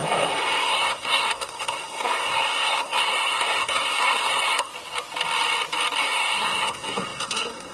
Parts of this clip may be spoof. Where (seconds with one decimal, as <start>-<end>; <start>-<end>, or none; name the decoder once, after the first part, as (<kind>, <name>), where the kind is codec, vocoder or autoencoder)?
0.0-4.7 (codec, SNAC); 6.0-7.7